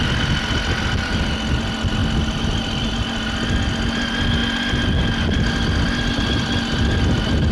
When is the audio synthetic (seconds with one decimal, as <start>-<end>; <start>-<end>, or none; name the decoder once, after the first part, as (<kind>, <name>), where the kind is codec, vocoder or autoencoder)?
none